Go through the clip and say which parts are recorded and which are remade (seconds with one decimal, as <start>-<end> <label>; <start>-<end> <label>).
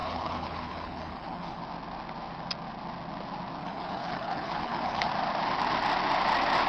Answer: 0.0-1.6 remade; 1.6-3.6 recorded; 3.6-5.1 remade; 5.1-6.7 recorded